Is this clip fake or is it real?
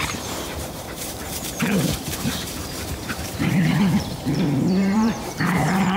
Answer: fake